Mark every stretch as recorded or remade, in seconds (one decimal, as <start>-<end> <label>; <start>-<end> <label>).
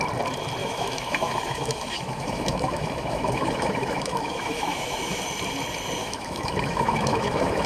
0.0-0.6 recorded; 0.6-5.2 remade; 5.2-6.0 recorded; 6.0-7.7 remade